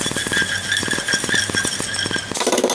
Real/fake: real